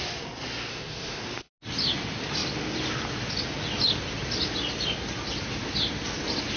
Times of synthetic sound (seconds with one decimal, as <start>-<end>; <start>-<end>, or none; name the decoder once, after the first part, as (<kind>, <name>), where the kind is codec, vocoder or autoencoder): 0.7-1.2 (autoencoder, DAC-VAE)